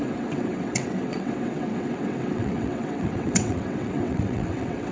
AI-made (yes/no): yes